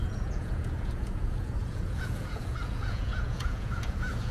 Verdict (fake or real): fake